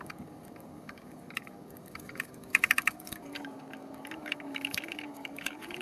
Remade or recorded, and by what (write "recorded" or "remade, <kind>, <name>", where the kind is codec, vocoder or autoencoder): remade, codec, DAC